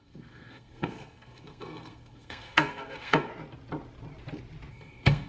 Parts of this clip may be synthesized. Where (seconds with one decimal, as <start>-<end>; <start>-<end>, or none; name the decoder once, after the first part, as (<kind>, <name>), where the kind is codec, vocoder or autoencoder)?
0.0-3.3 (codec, SNAC); 4.7-5.3